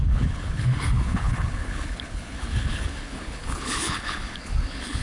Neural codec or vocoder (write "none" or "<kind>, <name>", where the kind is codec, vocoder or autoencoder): codec, HILCodec